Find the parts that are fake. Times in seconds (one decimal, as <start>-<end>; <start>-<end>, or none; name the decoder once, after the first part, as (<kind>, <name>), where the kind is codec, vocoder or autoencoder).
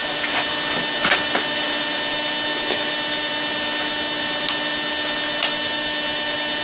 none